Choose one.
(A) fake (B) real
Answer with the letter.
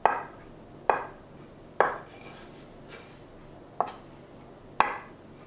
B